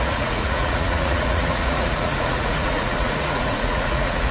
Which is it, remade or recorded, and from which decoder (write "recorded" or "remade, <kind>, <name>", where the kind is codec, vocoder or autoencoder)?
remade, vocoder, Vocos